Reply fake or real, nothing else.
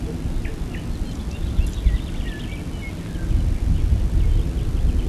real